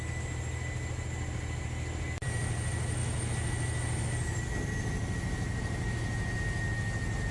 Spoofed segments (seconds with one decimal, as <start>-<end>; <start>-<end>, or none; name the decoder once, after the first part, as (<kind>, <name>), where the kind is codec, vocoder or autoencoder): none